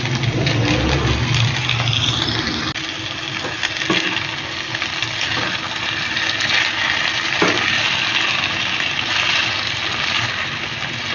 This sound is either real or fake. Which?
real